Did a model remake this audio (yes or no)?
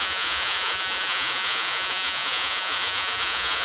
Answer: yes